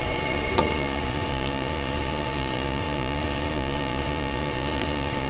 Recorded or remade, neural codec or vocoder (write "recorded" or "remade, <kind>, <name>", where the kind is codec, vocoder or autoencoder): remade, vocoder, Vocos